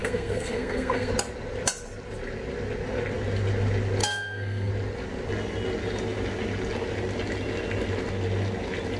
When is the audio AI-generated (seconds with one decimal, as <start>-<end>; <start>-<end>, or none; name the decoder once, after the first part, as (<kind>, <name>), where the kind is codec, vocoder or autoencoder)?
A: 0.0-1.1 (codec, SNAC); 4.0-4.7